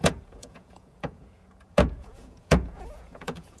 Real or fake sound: fake